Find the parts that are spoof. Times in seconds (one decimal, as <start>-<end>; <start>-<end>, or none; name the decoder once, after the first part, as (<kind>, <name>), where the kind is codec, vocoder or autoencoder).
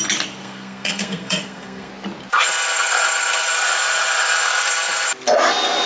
0.4-1.9 (codec, SNAC)